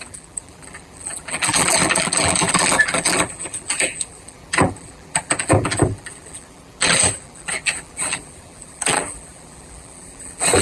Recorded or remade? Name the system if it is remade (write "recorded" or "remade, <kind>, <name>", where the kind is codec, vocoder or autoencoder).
remade, vocoder, BigVGAN v2